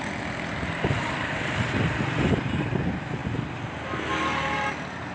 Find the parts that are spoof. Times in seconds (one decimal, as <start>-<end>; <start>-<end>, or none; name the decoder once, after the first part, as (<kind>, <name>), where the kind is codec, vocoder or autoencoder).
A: none